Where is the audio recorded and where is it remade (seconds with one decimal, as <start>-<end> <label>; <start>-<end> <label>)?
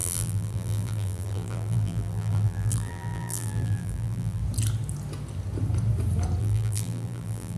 0.0-4.4 remade; 4.4-6.4 recorded; 6.4-7.6 remade